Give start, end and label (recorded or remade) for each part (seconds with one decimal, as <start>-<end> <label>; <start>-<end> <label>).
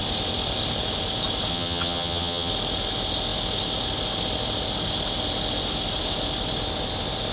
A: 0.0-1.5 recorded; 1.5-2.5 remade; 2.5-7.3 recorded